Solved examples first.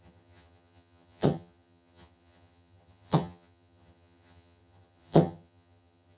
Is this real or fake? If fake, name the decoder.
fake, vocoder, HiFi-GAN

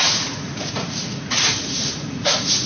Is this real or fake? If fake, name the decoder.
fake, vocoder, Vocos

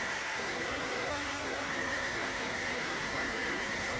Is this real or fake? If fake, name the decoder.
fake, codec, SNAC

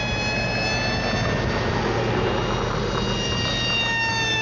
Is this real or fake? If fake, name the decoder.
real